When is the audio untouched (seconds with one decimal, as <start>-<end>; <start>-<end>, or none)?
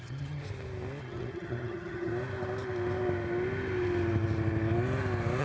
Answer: 0.4-1.0; 2.1-5.4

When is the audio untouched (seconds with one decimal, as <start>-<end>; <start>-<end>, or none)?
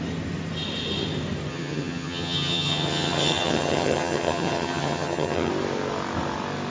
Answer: 0.0-1.5; 5.5-6.7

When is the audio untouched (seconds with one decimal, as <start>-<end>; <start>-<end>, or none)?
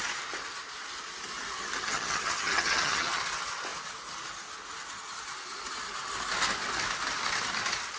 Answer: 0.0-1.8; 3.2-8.0